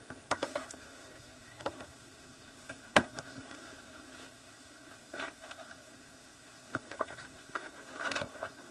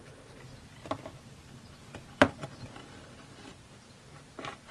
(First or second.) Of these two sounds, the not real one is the first